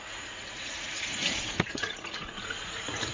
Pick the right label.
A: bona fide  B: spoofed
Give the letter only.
B